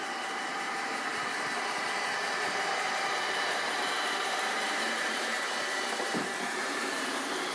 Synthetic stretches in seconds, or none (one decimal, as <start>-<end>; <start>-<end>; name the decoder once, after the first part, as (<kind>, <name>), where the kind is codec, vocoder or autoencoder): 0.0-7.5 (vocoder, BigVGAN v2)